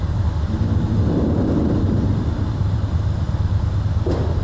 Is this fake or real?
fake